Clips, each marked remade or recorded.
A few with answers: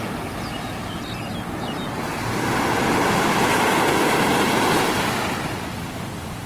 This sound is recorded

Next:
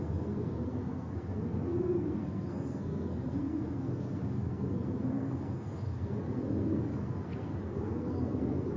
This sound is remade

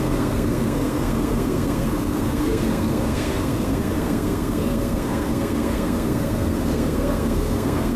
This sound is remade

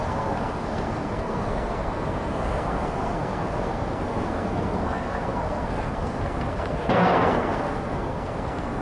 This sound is remade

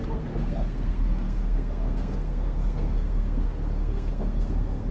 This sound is remade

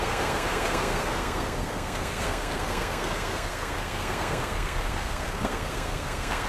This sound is remade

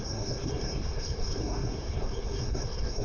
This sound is remade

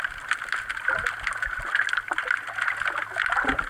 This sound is recorded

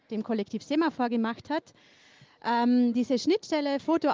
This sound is recorded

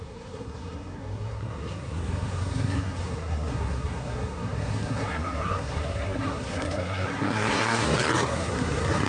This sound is remade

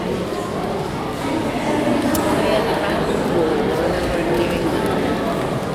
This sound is recorded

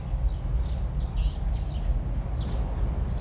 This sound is recorded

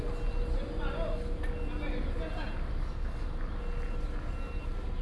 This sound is recorded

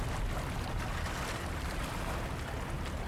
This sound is recorded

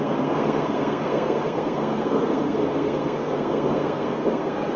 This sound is remade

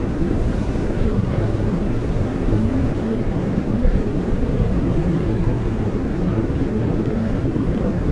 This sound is remade